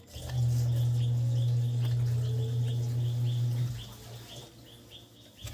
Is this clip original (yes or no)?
yes